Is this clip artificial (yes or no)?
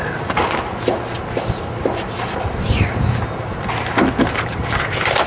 no